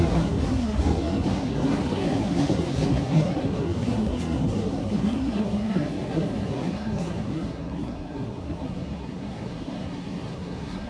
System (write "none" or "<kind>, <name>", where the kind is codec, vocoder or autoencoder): codec, SNAC